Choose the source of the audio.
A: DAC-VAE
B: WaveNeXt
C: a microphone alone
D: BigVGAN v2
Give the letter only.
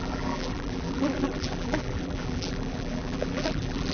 D